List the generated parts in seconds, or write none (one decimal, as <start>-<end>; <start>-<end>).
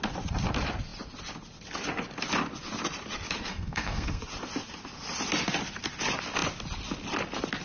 3.5-4.2